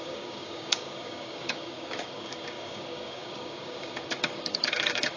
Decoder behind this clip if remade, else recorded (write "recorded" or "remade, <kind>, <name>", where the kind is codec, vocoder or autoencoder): remade, codec, DAC